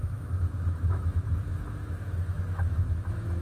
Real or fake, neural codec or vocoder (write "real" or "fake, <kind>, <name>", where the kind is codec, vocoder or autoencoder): fake, autoencoder, DAC-VAE